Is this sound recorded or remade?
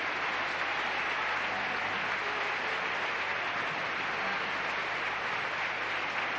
recorded